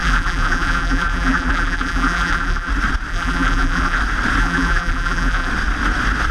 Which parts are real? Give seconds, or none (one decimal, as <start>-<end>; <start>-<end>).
2.7-3.1; 4.0-4.4; 5.5-6.3